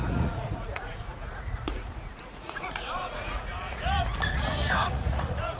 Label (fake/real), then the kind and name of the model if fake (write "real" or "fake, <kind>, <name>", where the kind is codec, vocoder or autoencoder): fake, vocoder, Vocos